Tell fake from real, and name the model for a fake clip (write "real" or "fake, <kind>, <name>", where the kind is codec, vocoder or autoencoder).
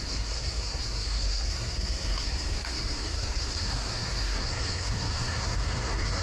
fake, codec, SNAC